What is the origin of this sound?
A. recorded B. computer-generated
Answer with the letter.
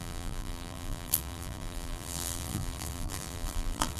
B